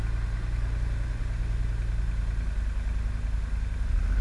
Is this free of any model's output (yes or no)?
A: yes